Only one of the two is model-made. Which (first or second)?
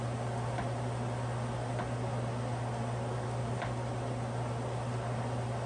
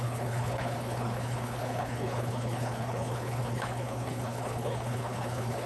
second